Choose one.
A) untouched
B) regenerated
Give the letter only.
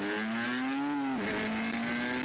A